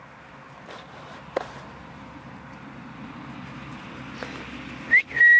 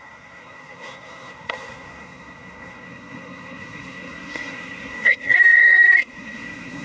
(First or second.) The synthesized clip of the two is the second